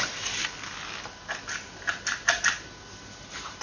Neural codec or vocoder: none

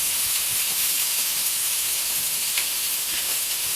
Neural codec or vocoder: autoencoder, DAC-VAE